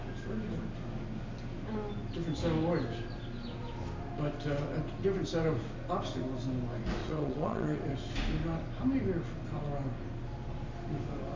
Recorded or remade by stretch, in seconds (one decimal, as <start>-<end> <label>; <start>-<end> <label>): 0.0-7.0 recorded; 7.0-7.8 remade; 7.8-11.4 recorded